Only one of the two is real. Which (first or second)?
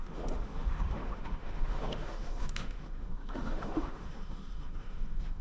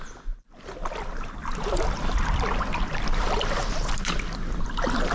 second